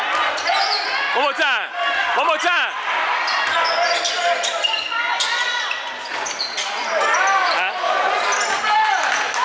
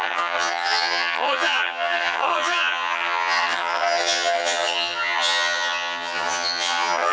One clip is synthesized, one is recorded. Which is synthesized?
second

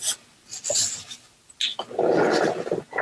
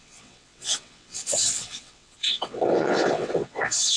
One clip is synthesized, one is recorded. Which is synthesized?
second